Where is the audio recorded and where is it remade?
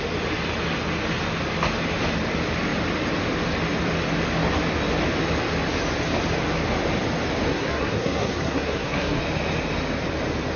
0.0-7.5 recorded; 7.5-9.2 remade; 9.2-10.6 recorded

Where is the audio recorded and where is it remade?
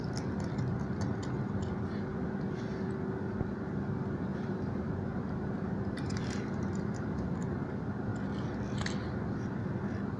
0.0-4.3 recorded; 4.3-7.5 remade; 7.5-10.2 recorded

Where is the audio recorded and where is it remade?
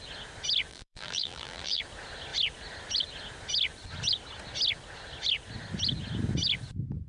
0.0-0.7 recorded; 0.7-1.8 remade; 1.8-7.1 recorded